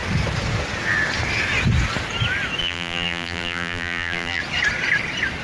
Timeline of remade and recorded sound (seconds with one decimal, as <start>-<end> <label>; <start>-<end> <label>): 0.0-2.6 recorded; 2.6-4.4 remade; 4.4-5.4 recorded